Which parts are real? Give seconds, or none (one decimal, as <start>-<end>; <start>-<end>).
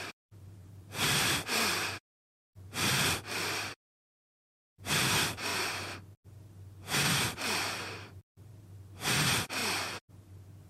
5.5-6.2; 9.6-10.1